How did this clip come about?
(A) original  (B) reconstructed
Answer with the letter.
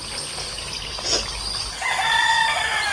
A